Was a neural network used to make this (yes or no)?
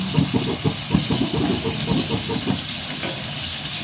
no